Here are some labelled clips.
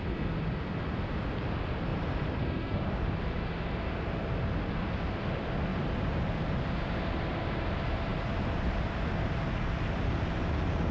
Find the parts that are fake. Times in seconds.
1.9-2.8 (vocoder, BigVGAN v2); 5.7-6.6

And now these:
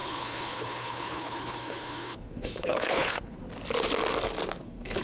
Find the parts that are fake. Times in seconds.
0.0-3.4 (codec, HILCodec); 4.6-5.0

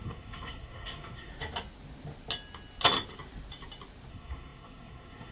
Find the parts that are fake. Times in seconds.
0.0-1.3 (codec, SNAC); 4.1-5.3

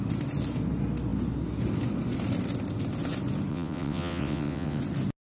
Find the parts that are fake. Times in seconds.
3.5-4.8 (vocoder, WaveNeXt)

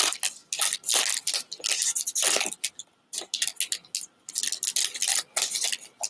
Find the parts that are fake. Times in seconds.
none

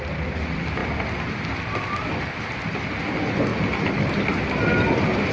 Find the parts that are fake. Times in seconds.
3.5-4.6 (vocoder, BigVGAN v2)

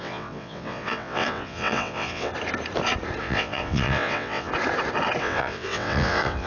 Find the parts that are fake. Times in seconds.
0.0-2.3 (vocoder, WaveNeXt); 3.2-4.5; 5.2-6.5

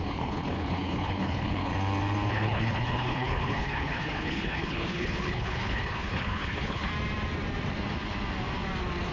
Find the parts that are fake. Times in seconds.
0.0-1.7 (codec, HILCodec); 2.3-6.9